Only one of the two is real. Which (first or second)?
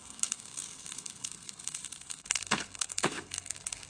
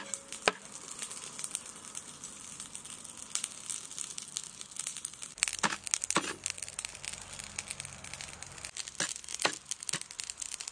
second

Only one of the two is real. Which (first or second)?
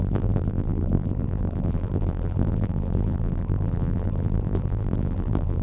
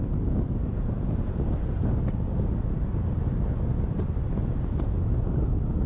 second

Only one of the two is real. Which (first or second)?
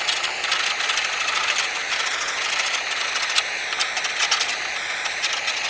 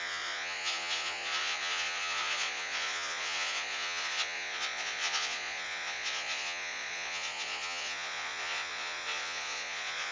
first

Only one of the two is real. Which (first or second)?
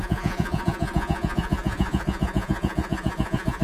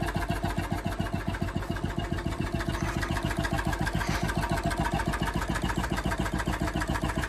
second